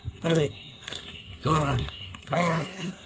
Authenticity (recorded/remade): remade